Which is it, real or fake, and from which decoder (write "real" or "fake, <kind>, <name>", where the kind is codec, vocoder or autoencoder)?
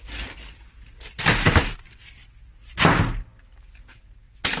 real